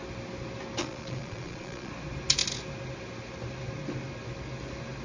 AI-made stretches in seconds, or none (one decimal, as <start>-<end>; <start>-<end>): 0.8-1.9

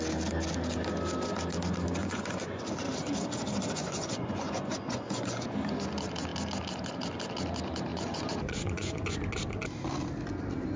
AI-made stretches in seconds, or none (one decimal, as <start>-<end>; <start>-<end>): 2.0-2.6; 3.8-5.5; 7.9-9.2

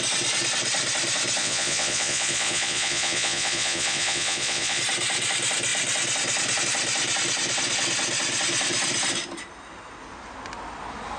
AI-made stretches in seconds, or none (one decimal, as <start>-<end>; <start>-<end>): 1.4-4.8

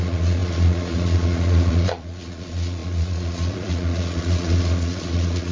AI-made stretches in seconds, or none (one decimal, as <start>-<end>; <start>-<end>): 0.0-5.5

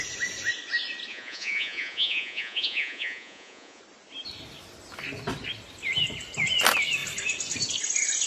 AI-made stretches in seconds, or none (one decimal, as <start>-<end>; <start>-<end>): 1.1-3.8

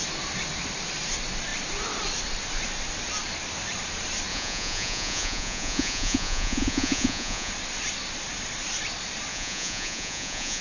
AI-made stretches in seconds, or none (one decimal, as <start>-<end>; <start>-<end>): 4.3-7.5; 9.3-10.6

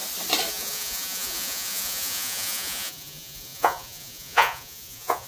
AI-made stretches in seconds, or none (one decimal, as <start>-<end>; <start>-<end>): 0.5-5.3

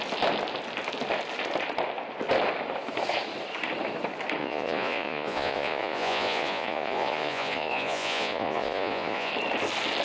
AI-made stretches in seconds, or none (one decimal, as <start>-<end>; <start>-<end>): 4.4-9.3